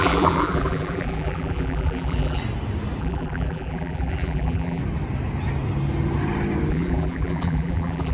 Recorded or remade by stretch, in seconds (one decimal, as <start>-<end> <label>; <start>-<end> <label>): 0.0-2.4 remade; 2.4-3.0 recorded; 3.0-4.8 remade; 4.8-6.7 recorded; 6.7-8.1 remade